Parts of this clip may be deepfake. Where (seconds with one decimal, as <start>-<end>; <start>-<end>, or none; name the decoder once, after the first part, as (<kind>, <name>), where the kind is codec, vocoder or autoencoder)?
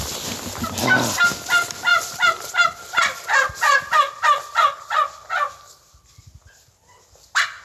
1.9-6.2 (vocoder, BigVGAN v2)